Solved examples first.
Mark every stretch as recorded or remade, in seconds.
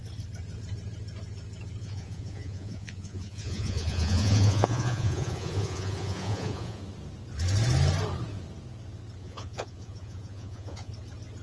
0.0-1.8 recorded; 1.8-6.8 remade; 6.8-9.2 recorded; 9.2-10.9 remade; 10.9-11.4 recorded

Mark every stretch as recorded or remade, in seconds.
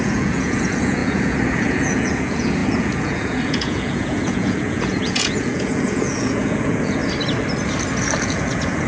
0.0-7.0 remade; 7.0-8.2 recorded; 8.2-8.9 remade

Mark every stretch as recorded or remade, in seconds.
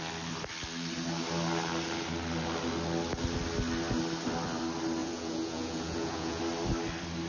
0.0-5.0 recorded; 5.0-6.4 remade; 6.4-7.3 recorded